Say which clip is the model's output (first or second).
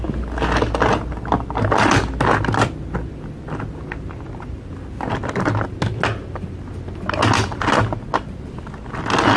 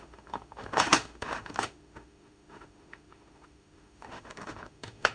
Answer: second